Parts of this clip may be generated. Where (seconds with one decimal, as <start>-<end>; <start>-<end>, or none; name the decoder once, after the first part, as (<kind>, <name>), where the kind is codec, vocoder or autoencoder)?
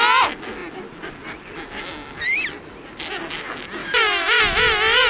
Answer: 3.8-4.4 (autoencoder, DAC-VAE)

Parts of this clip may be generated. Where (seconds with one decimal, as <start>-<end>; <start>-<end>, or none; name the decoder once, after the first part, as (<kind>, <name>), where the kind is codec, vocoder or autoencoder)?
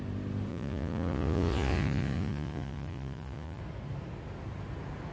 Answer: 0.5-3.6 (vocoder, Vocos)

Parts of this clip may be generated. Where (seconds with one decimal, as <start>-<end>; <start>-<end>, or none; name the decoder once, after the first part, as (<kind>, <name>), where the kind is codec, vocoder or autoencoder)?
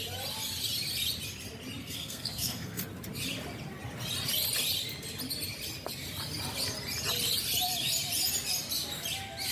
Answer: 1.8-2.8 (codec, SNAC)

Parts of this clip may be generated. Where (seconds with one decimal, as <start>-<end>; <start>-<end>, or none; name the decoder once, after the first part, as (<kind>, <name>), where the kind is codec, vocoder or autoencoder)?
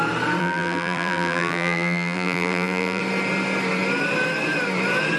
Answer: 0.4-3.0 (vocoder, BigVGAN v2)